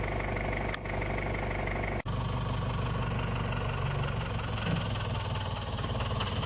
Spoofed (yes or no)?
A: no